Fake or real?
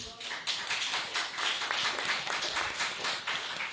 fake